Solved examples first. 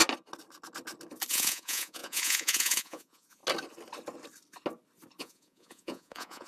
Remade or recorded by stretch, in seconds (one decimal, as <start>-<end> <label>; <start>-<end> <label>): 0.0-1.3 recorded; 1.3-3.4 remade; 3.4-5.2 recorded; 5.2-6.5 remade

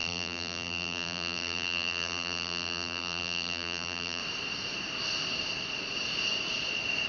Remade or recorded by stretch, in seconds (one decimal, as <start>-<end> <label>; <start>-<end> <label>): 0.0-4.2 remade; 4.2-7.1 recorded

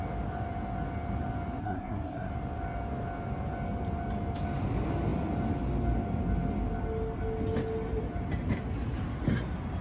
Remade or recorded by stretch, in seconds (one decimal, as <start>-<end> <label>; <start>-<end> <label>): 0.0-1.6 recorded; 1.6-2.3 remade; 2.3-9.8 recorded

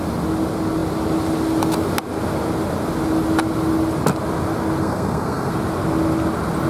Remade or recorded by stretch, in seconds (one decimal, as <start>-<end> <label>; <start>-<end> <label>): 0.0-4.8 recorded; 4.8-5.5 remade; 5.5-6.7 recorded

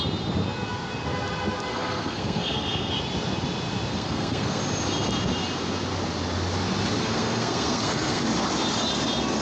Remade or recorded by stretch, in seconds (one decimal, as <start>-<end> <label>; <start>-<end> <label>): 0.0-1.7 recorded; 1.7-2.9 remade; 2.9-3.9 recorded; 3.9-4.6 remade; 4.6-7.0 recorded; 7.0-8.2 remade; 8.2-9.4 recorded

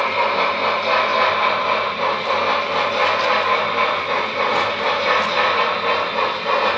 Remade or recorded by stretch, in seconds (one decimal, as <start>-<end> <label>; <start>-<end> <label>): 0.0-4.5 recorded; 4.5-5.2 remade; 5.2-6.8 recorded

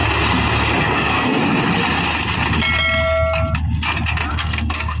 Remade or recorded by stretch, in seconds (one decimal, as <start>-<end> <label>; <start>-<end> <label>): 0.0-0.8 recorded; 0.8-1.4 remade; 1.4-4.3 recorded; 4.3-5.0 remade